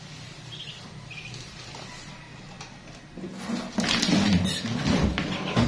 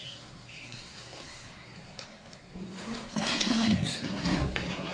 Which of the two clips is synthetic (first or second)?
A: second